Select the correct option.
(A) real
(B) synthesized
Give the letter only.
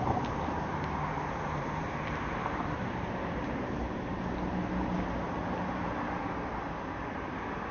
B